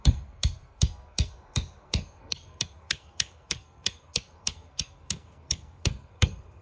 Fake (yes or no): yes